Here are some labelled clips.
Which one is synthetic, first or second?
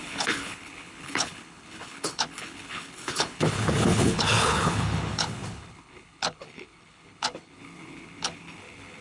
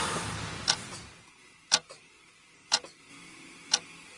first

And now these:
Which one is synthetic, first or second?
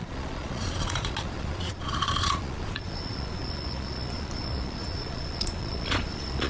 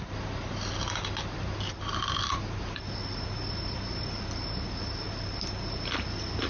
first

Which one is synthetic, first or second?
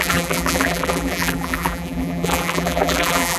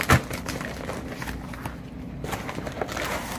first